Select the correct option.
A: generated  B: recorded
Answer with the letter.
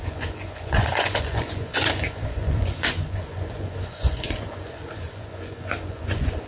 A